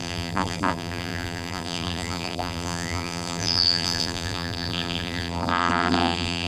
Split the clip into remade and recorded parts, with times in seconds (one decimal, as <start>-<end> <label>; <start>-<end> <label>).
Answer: 0.0-6.5 remade